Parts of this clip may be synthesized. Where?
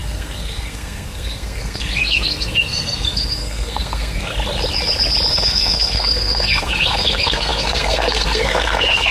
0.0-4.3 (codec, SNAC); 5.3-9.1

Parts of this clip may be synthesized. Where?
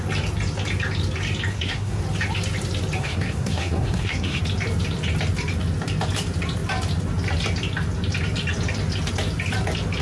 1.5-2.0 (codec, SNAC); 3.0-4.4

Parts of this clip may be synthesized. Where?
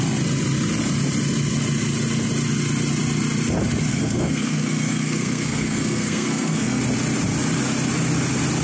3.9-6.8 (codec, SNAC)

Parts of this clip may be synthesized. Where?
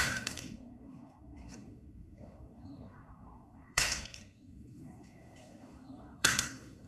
0.0-6.9 (codec, SNAC)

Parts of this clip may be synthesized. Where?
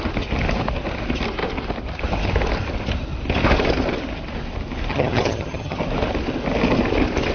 4.9-5.8 (vocoder, HiFi-GAN)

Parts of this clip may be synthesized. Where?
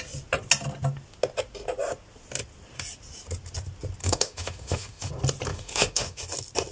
4.0-5.1 (autoencoder, DAC-VAE); 5.5-6.2